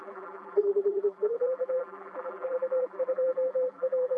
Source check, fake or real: fake